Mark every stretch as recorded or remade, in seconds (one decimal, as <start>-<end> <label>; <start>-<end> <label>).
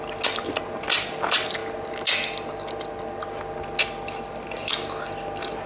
0.0-5.7 recorded